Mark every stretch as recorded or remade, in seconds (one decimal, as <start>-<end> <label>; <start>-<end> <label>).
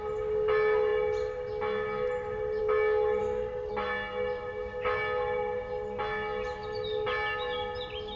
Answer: 0.0-3.2 recorded; 3.2-3.7 remade; 3.7-8.2 recorded